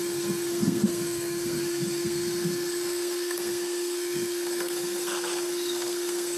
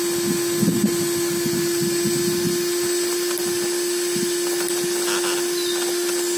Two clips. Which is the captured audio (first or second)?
second